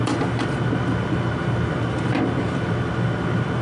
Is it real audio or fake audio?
fake